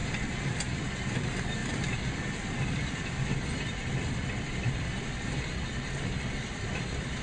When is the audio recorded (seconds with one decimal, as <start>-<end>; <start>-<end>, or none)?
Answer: none